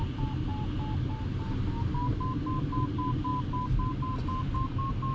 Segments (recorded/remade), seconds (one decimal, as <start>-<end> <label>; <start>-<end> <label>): 0.0-5.1 recorded